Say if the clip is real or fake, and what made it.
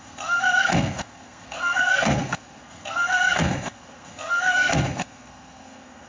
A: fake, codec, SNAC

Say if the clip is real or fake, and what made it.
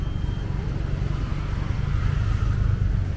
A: real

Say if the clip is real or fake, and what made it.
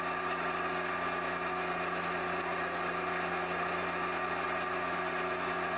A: real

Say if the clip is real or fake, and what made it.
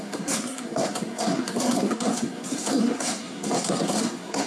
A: fake, codec, SNAC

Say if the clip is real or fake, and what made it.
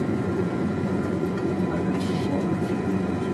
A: fake, vocoder, Vocos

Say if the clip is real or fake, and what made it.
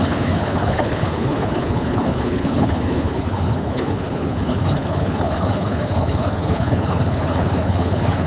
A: fake, codec, HILCodec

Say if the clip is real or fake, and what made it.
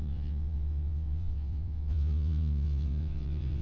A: fake, vocoder, WaveNeXt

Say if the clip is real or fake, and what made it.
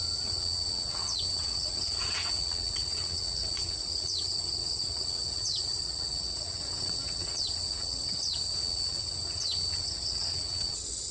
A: fake, vocoder, WaveNeXt